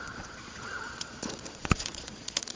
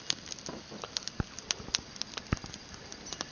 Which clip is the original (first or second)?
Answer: second